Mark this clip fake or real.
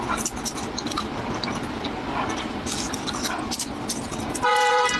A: real